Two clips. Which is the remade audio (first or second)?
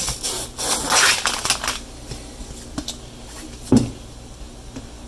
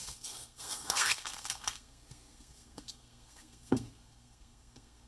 second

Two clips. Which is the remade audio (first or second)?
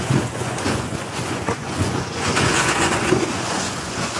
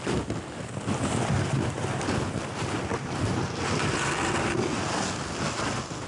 first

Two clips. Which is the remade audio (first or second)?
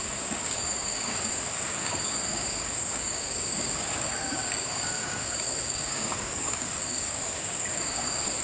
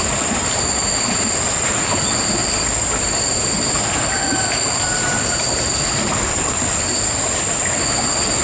first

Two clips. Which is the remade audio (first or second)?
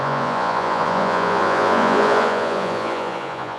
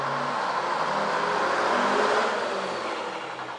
first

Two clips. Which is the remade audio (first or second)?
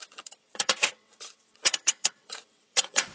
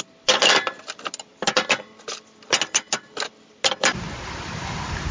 first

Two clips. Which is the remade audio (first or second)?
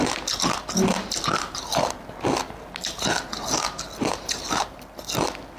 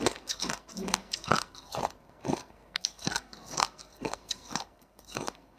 second